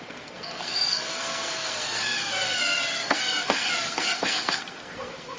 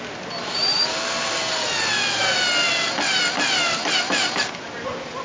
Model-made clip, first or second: first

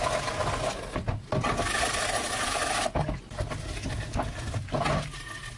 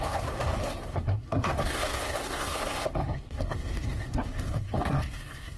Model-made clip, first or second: second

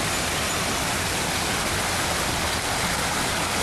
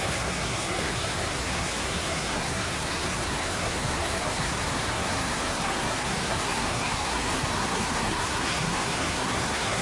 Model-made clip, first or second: second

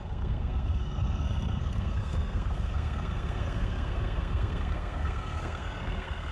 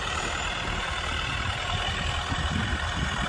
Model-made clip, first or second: first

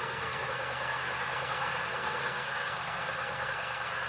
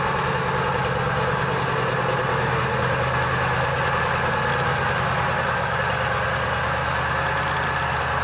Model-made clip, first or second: first